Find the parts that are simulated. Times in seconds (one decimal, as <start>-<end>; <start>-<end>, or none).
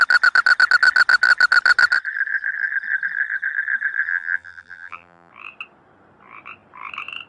4.1-5.3